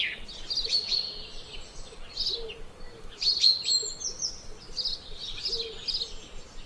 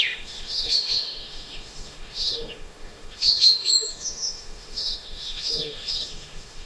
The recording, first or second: first